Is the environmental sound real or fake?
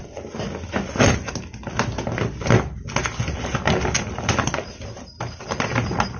real